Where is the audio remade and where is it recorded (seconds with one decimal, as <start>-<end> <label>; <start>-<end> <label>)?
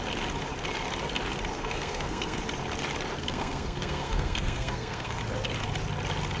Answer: 0.0-1.5 recorded; 1.5-2.4 remade; 2.4-3.2 recorded; 3.2-5.2 remade; 5.2-6.4 recorded